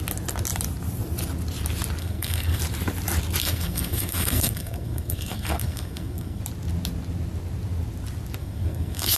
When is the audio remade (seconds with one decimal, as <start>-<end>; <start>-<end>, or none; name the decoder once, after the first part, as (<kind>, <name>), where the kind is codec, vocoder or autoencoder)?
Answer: 2.0-2.6 (codec, SNAC); 3.4-6.4; 8.4-9.2